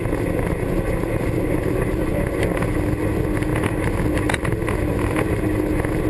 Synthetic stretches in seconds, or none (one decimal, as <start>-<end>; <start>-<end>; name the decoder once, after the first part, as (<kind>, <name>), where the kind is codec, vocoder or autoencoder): none